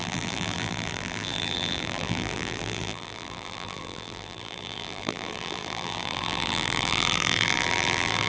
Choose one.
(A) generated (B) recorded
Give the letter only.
A